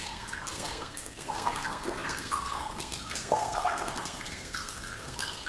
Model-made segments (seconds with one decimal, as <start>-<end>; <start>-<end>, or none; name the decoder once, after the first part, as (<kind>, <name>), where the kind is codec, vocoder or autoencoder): 0.0-5.5 (codec, SNAC)